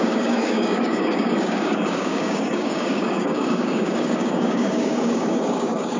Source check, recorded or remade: remade